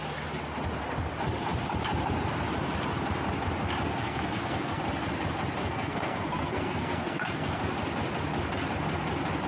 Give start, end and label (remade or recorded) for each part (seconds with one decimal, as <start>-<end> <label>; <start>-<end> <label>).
0.0-3.9 recorded; 3.9-4.8 remade; 4.8-5.6 recorded; 5.6-7.6 remade; 7.6-9.5 recorded